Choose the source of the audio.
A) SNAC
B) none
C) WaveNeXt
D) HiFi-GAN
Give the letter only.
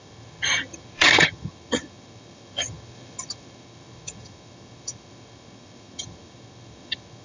D